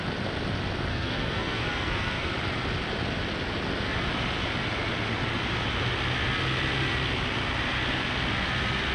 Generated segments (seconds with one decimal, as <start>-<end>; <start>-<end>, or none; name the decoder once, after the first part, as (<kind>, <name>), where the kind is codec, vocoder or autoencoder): 0.9-2.3 (codec, SNAC)